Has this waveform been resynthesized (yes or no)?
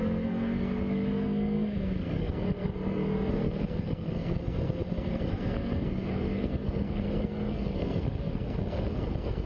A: yes